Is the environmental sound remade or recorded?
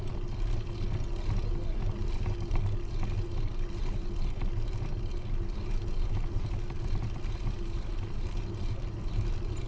recorded